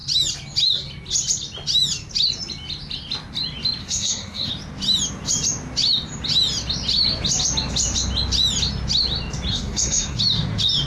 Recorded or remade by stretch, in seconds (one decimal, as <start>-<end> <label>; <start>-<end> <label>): 0.0-3.8 recorded; 3.8-4.5 remade; 4.5-9.5 recorded; 9.5-10.2 remade; 10.2-10.9 recorded